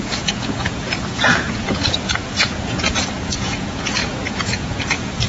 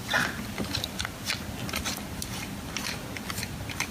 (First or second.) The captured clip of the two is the second